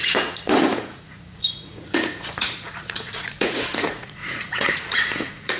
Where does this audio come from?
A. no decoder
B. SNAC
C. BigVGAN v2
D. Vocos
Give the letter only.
D